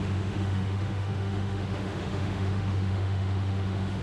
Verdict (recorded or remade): remade